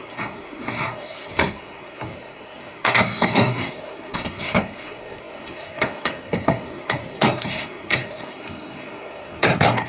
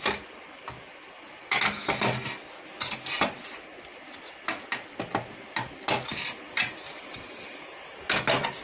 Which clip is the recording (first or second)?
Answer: second